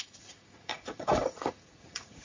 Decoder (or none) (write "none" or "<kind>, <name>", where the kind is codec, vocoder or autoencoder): vocoder, Vocos